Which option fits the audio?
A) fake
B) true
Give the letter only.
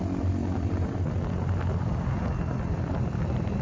B